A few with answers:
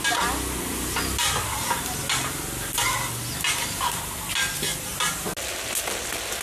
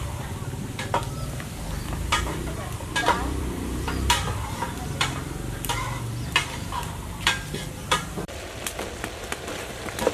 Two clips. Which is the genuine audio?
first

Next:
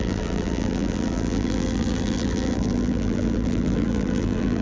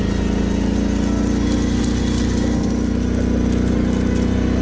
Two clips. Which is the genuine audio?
second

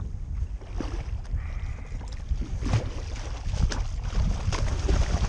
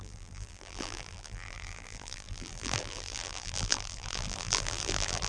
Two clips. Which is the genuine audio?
first